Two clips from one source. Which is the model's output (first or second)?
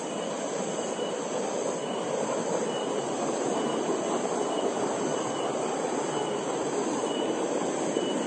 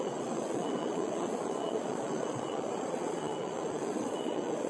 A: second